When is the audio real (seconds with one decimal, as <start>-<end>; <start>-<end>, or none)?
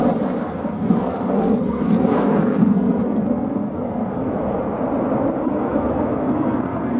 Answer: 0.0-0.4; 4.6-5.5